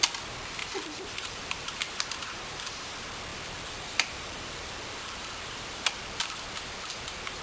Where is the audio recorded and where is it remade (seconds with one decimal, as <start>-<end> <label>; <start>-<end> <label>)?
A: 0.0-0.6 recorded; 0.6-1.7 remade; 1.7-3.3 recorded; 3.3-6.0 remade; 6.0-7.4 recorded